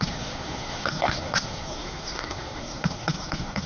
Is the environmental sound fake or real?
fake